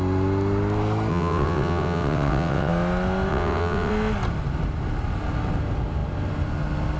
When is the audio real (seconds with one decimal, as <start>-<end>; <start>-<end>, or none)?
0.0-1.1; 2.7-3.3; 3.9-7.0

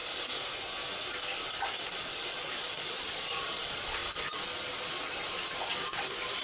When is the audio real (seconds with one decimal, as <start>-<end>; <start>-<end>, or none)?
0.0-1.5

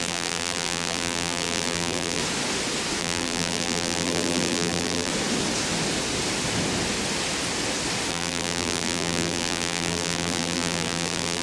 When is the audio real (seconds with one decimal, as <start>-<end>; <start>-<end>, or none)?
2.2-3.0; 5.1-8.1

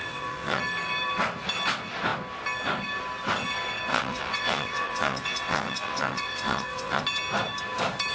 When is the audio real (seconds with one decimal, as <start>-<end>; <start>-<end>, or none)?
0.6-3.9; 7.0-8.1

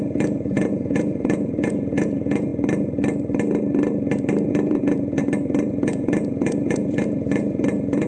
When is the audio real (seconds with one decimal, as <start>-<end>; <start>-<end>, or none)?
2.5-4.5; 5.2-5.7

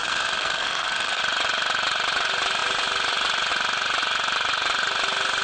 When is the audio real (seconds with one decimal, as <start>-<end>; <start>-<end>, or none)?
1.2-5.4